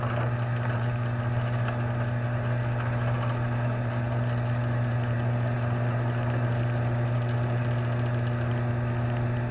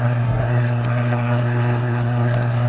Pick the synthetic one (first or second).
second